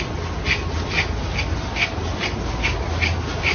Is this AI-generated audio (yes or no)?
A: no